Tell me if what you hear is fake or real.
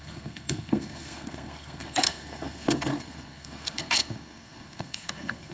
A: fake